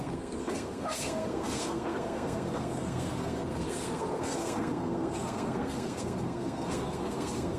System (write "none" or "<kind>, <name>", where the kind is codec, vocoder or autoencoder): codec, SNAC